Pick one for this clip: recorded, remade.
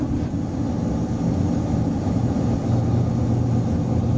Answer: recorded